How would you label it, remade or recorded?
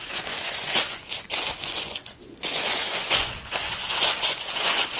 remade